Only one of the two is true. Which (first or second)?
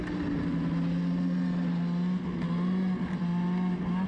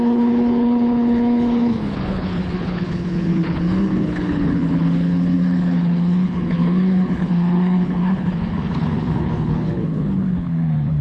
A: first